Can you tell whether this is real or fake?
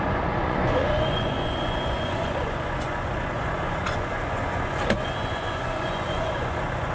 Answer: fake